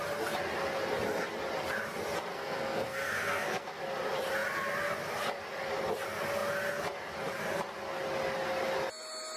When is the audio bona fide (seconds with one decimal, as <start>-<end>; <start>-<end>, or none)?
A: 0.0-2.3; 3.8-9.4